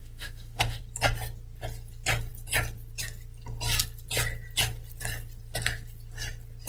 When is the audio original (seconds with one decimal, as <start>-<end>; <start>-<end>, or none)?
0.8-6.7